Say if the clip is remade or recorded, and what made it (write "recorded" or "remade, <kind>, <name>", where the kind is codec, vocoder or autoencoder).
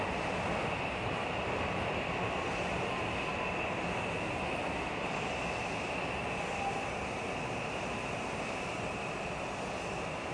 recorded